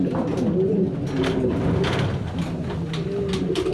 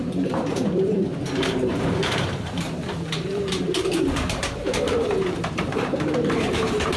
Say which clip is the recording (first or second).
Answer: first